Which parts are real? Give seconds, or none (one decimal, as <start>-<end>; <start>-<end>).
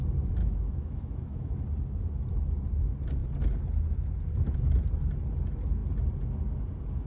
0.0-0.4; 1.5-7.1